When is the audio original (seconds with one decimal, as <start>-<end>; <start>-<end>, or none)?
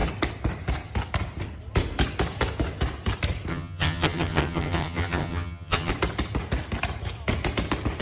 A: 0.0-3.5; 5.9-8.0